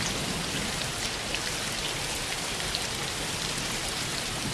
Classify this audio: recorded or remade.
recorded